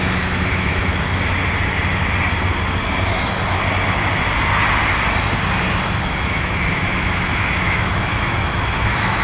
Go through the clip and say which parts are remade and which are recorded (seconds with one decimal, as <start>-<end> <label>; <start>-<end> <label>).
0.0-0.9 remade; 0.9-6.0 recorded; 6.0-9.2 remade